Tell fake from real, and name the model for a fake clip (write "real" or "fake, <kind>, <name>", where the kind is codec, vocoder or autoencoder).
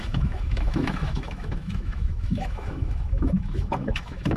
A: fake, autoencoder, DAC-VAE